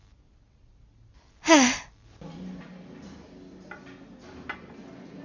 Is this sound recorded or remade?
recorded